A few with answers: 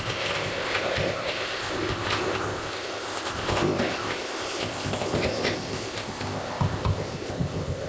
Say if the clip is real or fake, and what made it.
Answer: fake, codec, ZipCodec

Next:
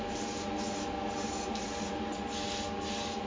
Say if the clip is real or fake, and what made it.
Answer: real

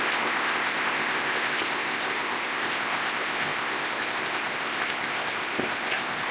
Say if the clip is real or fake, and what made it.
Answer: fake, codec, ZipCodec